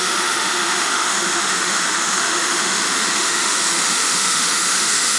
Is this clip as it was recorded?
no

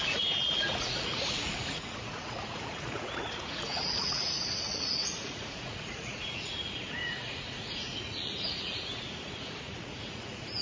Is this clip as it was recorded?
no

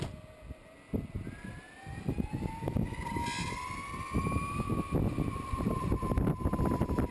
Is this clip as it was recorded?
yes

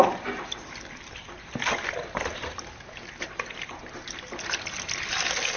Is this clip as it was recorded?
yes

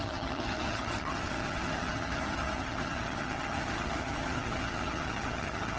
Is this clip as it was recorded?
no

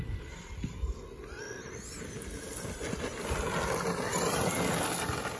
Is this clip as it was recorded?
yes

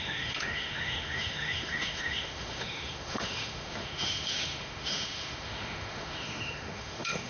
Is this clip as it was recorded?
no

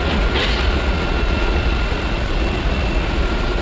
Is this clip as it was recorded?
no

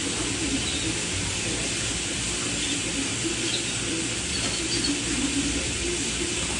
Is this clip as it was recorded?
yes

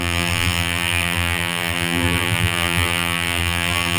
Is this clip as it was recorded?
no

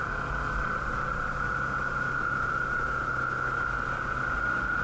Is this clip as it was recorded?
yes